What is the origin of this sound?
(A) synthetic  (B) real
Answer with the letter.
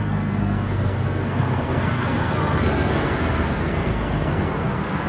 A